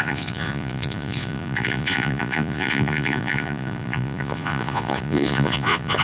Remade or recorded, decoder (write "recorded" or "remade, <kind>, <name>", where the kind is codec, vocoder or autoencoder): remade, vocoder, Vocos